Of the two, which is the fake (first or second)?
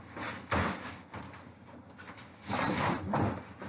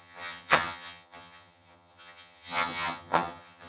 second